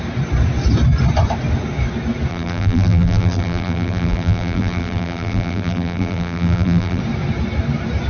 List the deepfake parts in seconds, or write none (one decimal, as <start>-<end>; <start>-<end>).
2.3-7.0